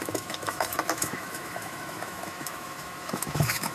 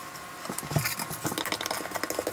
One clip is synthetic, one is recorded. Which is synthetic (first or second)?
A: first